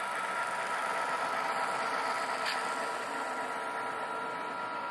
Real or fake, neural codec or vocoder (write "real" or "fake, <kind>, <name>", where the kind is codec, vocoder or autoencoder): real